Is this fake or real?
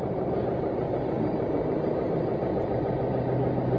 real